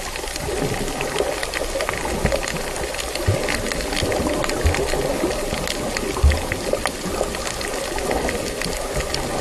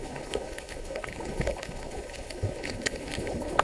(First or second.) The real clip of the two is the first